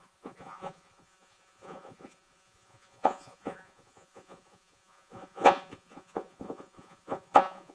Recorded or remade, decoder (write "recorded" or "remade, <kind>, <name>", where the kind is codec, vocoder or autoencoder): remade, vocoder, Vocos